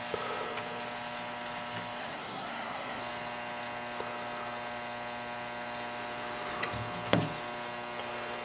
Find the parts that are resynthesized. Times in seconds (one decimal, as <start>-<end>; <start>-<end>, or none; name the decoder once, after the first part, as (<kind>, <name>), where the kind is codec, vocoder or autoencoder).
2.0-3.0 (codec, SNAC)